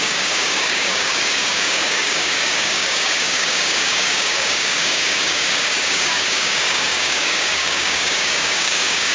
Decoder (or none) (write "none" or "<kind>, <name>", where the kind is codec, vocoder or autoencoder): codec, DAC